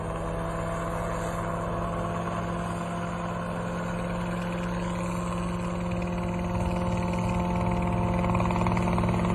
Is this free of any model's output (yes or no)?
yes